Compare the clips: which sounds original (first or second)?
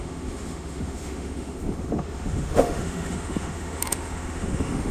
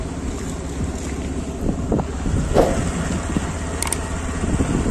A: second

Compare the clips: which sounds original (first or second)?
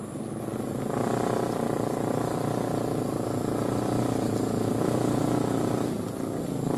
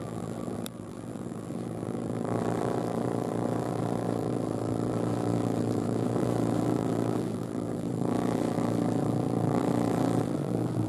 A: first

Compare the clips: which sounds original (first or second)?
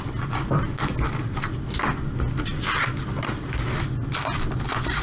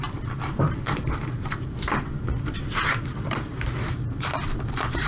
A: first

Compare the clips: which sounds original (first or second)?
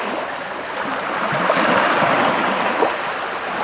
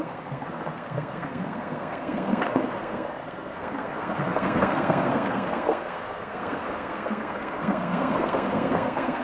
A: first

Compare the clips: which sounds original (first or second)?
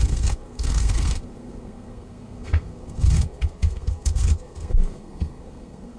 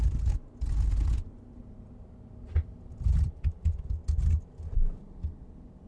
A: second